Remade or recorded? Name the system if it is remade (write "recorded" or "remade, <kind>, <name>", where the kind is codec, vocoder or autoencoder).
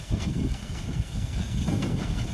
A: remade, codec, SNAC